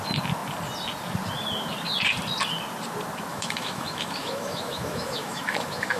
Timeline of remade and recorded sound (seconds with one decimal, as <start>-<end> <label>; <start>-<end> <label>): 0.0-3.3 recorded; 3.3-6.0 remade